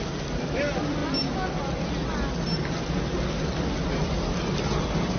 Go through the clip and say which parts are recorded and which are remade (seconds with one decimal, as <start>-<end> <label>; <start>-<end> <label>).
0.0-5.2 recorded